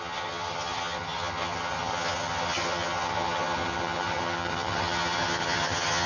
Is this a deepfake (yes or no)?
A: yes